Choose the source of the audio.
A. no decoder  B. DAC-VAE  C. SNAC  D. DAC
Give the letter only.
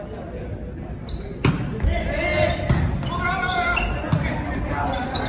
A